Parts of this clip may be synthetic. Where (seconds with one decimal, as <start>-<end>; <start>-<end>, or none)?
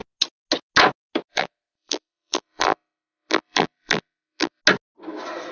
1.3-4.6